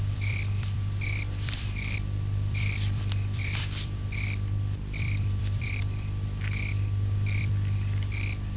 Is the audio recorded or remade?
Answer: remade